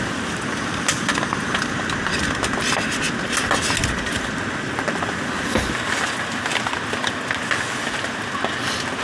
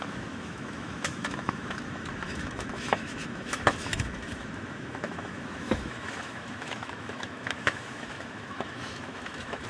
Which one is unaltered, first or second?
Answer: first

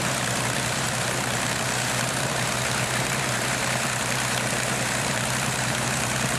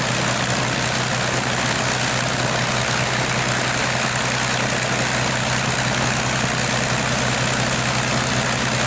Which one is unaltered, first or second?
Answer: second